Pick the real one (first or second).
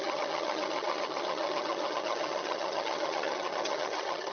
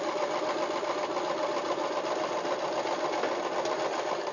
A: second